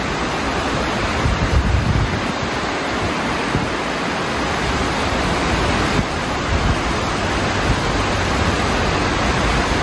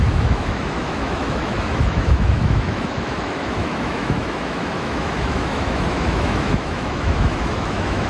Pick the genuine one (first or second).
first